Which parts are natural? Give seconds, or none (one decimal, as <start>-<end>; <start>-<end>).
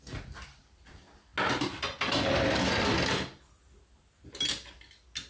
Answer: 0.0-5.3